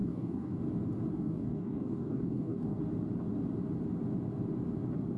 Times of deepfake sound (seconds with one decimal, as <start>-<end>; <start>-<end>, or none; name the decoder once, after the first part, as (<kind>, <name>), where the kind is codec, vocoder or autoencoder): 0.0-0.6 (codec, DAC); 1.1-2.8